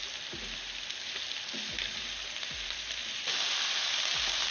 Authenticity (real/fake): real